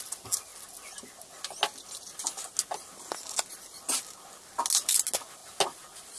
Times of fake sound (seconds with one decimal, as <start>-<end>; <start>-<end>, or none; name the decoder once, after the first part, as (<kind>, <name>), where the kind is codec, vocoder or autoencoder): none